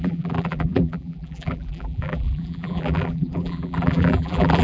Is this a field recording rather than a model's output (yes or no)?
no